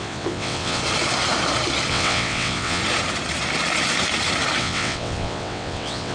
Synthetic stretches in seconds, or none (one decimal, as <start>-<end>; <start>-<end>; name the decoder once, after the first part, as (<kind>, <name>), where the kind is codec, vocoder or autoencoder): 0.0-0.8 (vocoder, WaveNeXt); 1.9-2.8; 4.6-6.1